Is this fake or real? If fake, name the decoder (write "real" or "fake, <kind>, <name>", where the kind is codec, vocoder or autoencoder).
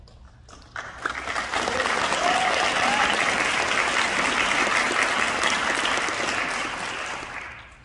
real